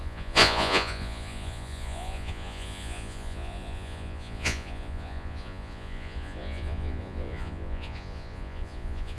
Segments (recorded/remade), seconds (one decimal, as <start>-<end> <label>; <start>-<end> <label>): 0.0-9.2 remade